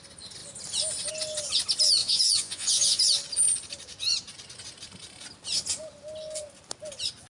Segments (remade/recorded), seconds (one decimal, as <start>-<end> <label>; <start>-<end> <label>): 0.0-2.0 recorded; 2.0-3.0 remade; 3.0-7.3 recorded